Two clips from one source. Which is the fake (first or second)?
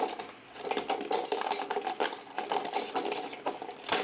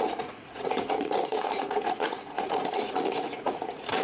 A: second